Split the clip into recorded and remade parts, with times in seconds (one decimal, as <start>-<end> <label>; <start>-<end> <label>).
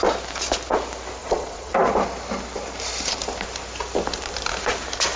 0.0-1.2 recorded; 1.2-1.7 remade; 1.7-5.2 recorded